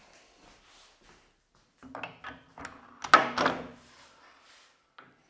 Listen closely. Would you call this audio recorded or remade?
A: recorded